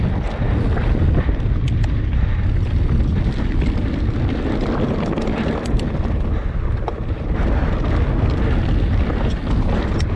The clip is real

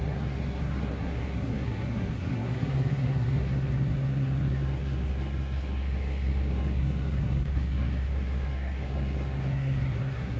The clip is fake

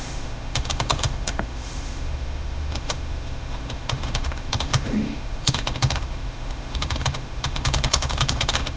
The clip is fake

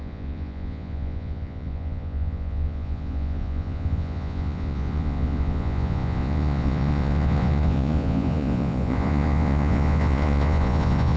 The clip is fake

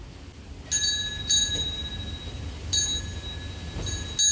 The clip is real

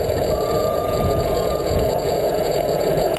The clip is fake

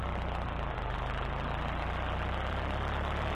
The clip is fake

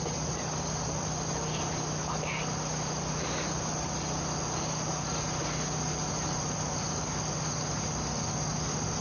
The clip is real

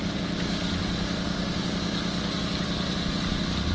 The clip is real